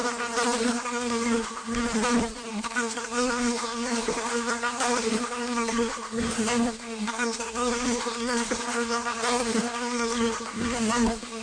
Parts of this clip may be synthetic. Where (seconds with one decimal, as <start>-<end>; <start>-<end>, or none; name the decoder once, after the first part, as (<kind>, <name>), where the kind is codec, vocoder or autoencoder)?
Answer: 0.6-1.8 (codec, SNAC); 2.5-11.4